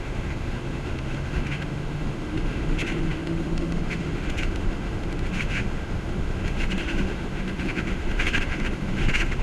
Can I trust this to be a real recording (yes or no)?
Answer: no